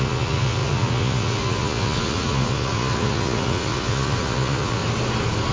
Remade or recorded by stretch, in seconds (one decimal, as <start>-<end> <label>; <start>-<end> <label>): 0.0-4.8 remade; 4.8-5.5 recorded